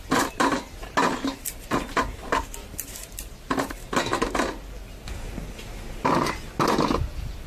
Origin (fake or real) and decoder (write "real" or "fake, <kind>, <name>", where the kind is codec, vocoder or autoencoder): real